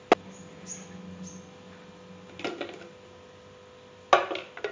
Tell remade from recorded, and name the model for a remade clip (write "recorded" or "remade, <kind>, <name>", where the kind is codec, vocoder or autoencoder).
recorded